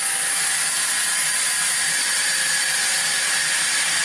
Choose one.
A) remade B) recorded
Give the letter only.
B